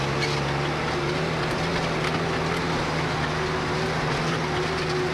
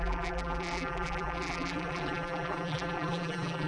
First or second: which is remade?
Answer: second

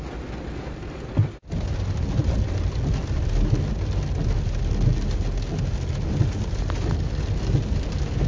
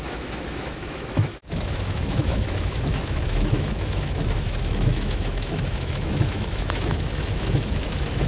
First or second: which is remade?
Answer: second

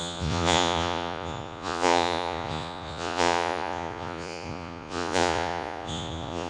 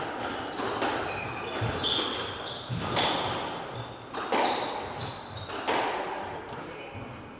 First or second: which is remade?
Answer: first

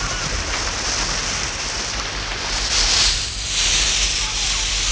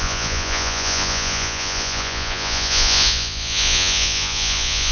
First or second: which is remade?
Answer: second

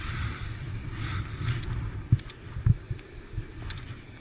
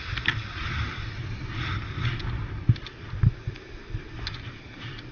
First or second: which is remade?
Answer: first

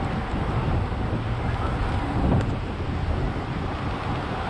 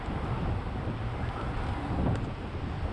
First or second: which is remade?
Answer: second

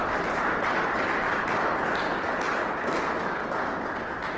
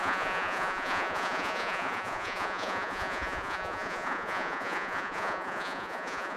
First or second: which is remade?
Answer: second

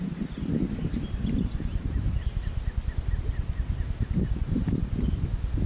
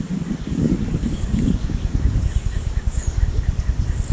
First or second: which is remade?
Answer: second